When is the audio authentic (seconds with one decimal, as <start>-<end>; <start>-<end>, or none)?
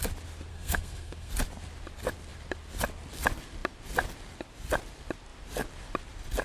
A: 0.0-0.5; 1.3-6.4